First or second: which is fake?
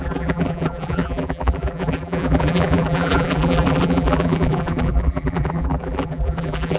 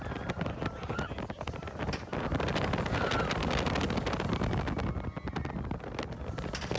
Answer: first